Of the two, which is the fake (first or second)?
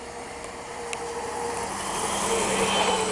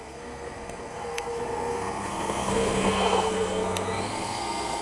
second